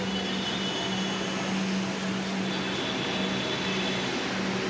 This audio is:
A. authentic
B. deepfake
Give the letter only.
A